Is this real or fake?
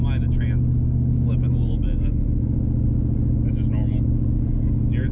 real